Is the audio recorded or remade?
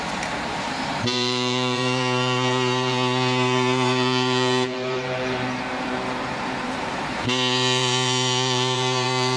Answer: remade